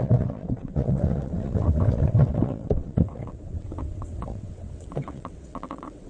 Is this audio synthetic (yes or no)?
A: yes